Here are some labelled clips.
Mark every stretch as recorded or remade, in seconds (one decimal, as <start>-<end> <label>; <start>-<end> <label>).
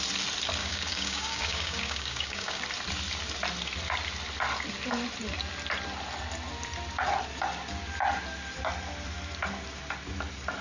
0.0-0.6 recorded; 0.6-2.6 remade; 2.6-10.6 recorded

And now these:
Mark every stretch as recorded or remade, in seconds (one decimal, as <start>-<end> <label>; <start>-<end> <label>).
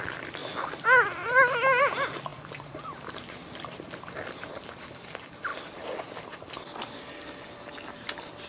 0.0-8.5 recorded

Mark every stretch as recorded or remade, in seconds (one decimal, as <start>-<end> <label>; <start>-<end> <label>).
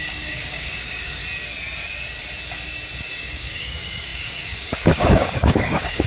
0.0-1.2 remade; 1.2-3.2 recorded; 3.2-6.1 remade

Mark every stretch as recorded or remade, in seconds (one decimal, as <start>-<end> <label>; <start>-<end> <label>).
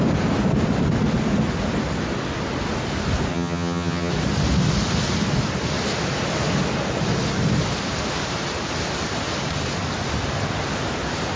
0.0-3.3 recorded; 3.3-4.1 remade; 4.1-11.4 recorded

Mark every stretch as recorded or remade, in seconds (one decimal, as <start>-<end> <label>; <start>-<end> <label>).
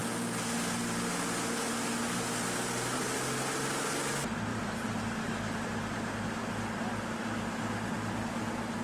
0.0-4.5 recorded; 4.5-5.7 remade; 5.7-8.8 recorded